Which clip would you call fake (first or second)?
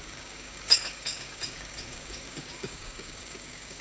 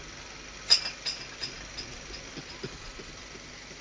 first